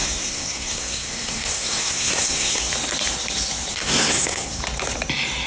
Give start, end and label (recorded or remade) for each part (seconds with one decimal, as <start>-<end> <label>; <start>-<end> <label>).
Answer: 0.0-2.7 remade; 2.7-3.7 recorded; 3.7-4.6 remade; 4.6-5.5 recorded